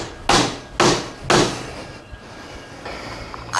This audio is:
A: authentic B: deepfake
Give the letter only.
A